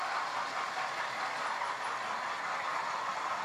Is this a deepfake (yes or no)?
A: yes